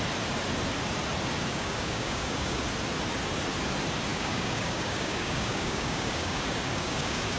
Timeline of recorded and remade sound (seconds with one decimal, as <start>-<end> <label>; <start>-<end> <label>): 0.0-1.5 recorded; 1.5-2.6 remade; 2.6-4.1 recorded; 4.1-7.4 remade